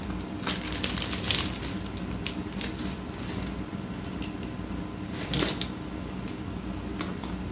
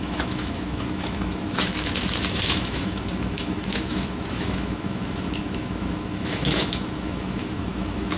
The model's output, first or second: second